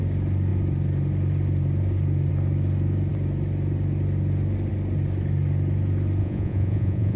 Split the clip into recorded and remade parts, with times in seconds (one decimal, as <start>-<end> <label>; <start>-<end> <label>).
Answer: 0.0-6.2 recorded; 6.2-7.2 remade